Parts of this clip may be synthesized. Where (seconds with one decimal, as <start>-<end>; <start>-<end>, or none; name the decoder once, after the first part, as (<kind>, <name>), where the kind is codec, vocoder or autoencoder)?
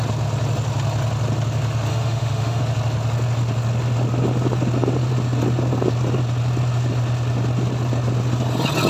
1.9-2.6 (autoencoder, DAC-VAE)